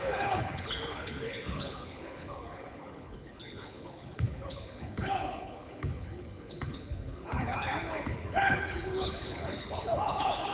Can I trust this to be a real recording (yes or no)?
no